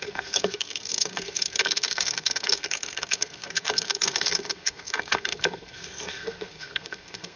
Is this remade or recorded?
remade